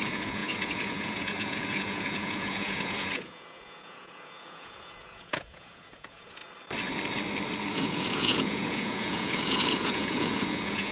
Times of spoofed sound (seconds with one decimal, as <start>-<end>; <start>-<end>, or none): 0.0-6.4; 7.7-10.9